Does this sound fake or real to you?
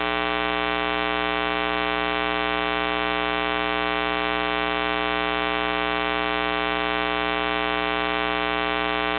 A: fake